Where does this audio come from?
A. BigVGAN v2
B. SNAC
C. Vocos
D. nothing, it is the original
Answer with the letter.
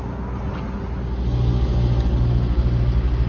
D